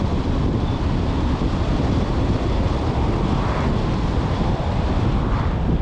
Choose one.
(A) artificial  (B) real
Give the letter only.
A